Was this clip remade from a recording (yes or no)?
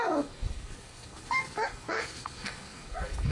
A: yes